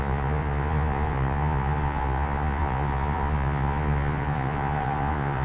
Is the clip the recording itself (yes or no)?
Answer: no